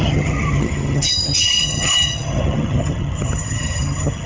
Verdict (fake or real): fake